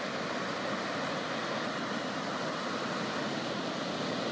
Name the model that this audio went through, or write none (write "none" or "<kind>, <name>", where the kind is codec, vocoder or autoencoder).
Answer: none